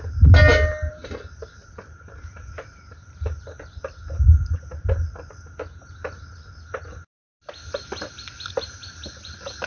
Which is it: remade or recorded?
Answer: recorded